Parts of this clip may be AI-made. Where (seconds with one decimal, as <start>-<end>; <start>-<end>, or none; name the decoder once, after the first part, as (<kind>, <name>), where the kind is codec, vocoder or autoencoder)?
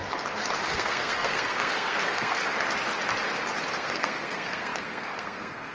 0.7-2.4 (codec, SNAC); 3.7-5.7